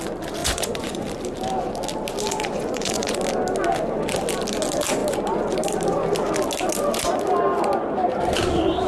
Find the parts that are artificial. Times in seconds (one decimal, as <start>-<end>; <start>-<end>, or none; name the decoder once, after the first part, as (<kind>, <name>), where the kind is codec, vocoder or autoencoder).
0.4-1.0 (vocoder, Vocos); 2.3-3.2